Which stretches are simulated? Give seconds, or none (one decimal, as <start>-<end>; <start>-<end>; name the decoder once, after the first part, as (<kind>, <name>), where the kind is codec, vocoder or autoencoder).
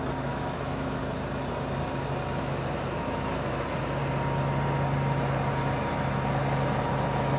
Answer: 0.0-1.0 (autoencoder, DAC-VAE); 2.4-4.0